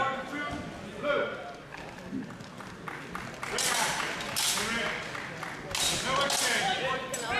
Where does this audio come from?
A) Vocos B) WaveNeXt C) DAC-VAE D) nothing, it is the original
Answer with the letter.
D